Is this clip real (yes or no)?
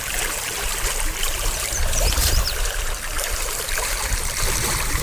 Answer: no